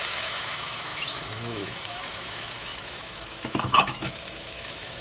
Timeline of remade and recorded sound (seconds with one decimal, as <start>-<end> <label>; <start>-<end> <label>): 0.0-5.0 remade